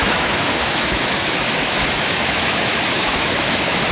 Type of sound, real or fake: fake